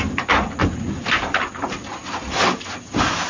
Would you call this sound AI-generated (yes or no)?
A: no